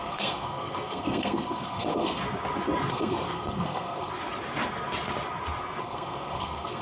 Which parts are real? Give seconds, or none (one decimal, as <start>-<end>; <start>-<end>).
2.2-2.9; 4.1-5.8